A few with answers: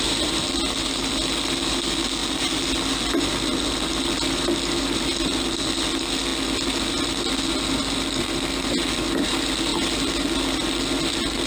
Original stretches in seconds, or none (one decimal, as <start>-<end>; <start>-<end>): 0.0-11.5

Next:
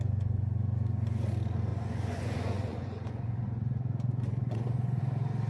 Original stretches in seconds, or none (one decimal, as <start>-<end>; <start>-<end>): 0.0-1.7; 5.0-5.5

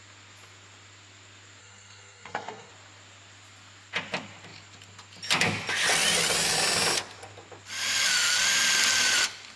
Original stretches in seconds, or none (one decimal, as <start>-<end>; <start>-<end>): 0.0-1.6; 2.7-9.6

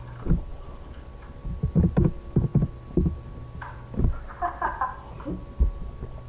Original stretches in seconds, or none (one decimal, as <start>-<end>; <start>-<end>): 0.0-6.3

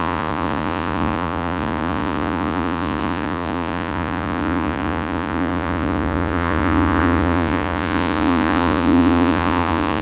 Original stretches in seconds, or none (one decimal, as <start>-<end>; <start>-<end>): none